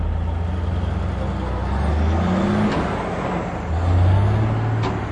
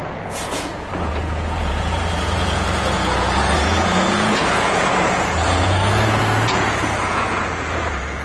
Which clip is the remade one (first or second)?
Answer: second